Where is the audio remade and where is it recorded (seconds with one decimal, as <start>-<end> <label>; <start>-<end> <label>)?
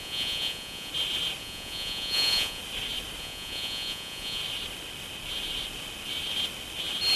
0.0-0.9 remade; 0.9-1.4 recorded; 1.4-2.6 remade; 2.6-3.2 recorded; 3.2-4.4 remade; 4.4-7.2 recorded